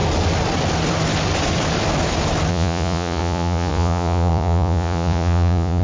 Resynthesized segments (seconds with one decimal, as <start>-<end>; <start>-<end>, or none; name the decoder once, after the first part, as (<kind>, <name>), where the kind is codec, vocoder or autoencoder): 2.5-5.8 (vocoder, Vocos)